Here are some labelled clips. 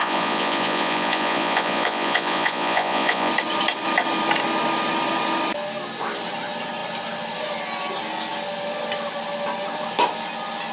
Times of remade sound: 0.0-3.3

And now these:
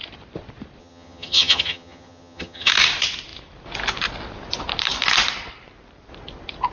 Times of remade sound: 0.8-2.7

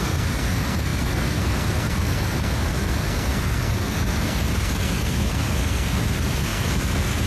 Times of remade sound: 0.0-7.3